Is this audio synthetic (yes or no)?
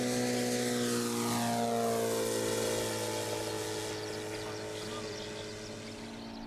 no